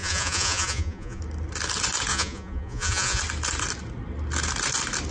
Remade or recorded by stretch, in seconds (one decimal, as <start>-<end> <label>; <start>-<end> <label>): 0.0-1.2 remade; 1.2-2.1 recorded; 2.1-3.2 remade; 3.2-5.1 recorded